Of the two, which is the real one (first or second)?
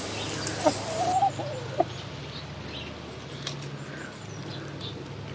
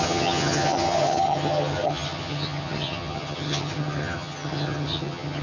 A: first